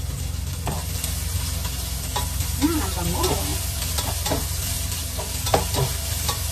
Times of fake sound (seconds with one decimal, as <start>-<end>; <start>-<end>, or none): 3.5-6.5